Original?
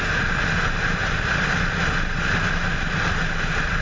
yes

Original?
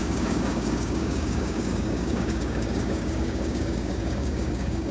no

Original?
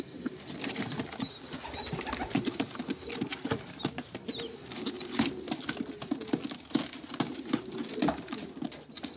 yes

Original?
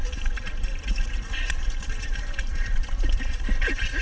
no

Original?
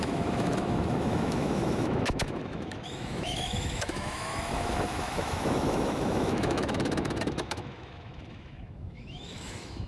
no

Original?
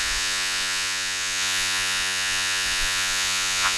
no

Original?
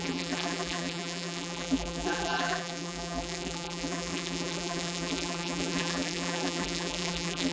no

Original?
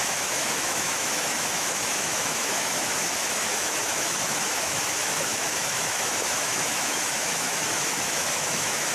no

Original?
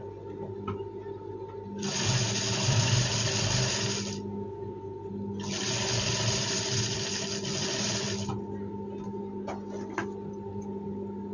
yes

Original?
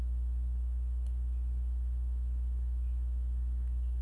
yes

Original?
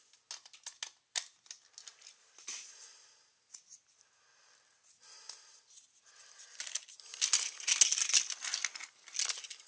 yes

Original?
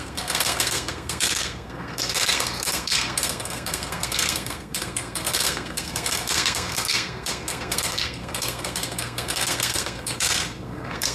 no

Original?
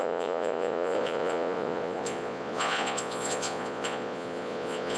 no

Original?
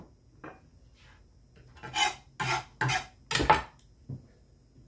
yes